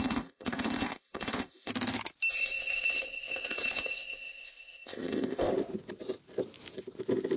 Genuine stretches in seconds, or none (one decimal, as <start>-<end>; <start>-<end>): 1.7-2.3; 5.5-7.4